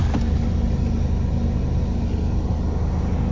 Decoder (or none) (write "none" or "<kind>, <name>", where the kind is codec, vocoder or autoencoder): none